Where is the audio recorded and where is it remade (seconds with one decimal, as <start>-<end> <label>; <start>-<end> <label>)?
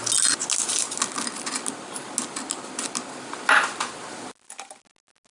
0.0-5.3 recorded